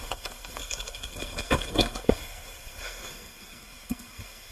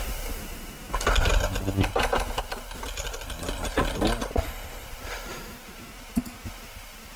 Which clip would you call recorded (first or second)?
second